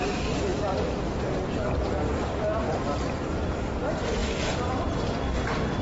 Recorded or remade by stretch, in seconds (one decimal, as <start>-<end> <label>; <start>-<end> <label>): 0.0-0.5 remade; 0.5-1.8 recorded; 1.8-5.8 remade